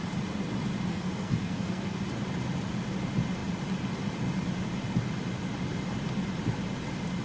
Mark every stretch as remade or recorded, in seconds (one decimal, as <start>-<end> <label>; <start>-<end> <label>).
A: 0.0-0.9 recorded; 0.9-2.0 remade; 2.0-7.2 recorded